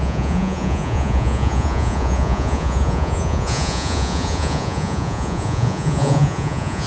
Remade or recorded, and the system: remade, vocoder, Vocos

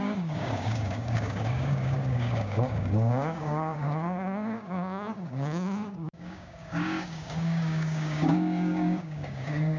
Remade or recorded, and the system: remade, codec, DAC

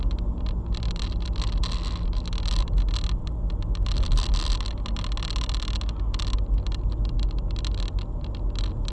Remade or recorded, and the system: recorded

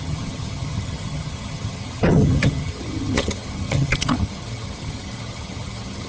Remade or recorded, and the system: remade, vocoder, HiFi-GAN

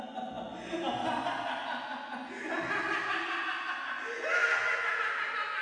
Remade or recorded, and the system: recorded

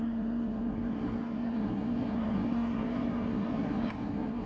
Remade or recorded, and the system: remade, codec, SNAC